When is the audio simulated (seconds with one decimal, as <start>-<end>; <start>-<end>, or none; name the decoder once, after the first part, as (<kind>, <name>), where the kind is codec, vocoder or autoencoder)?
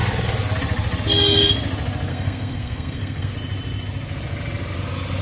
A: 2.1-3.3 (codec, SNAC)